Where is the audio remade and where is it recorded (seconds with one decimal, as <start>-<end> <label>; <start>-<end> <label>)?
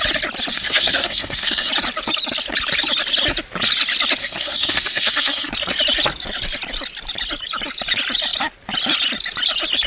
0.0-0.5 recorded; 0.5-1.7 remade; 1.7-4.2 recorded; 4.2-5.5 remade; 5.5-9.9 recorded